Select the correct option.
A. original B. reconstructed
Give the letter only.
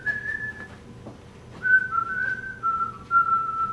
A